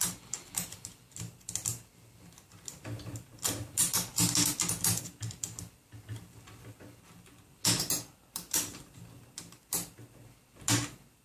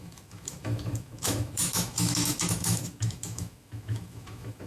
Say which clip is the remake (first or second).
second